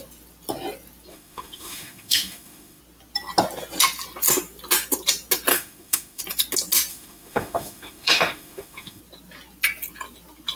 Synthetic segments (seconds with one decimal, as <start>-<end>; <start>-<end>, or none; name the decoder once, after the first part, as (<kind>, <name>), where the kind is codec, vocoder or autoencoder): 1.1-2.8 (autoencoder, DAC-VAE); 5.5-6.2; 6.9-9.0